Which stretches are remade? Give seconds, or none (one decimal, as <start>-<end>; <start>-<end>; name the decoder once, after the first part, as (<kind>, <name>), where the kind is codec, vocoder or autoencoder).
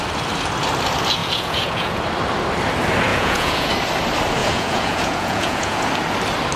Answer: 1.2-2.0 (vocoder, Vocos); 3.1-3.7; 4.4-5.9